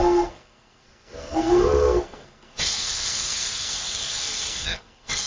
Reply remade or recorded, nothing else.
remade